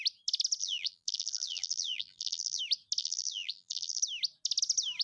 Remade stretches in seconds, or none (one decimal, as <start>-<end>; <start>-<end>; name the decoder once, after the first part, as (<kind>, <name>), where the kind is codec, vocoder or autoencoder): 0.6-2.6 (vocoder, BigVGAN v2); 3.0-4.0